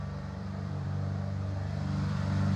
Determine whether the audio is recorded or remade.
remade